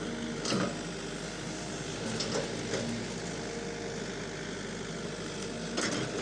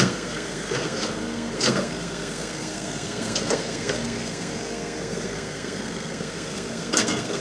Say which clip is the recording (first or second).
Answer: first